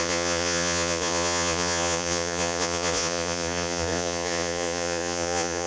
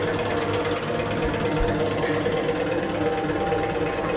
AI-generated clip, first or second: first